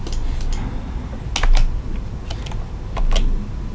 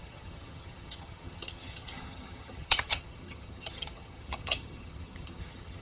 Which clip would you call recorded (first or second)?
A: first